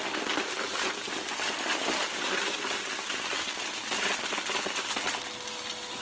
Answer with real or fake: real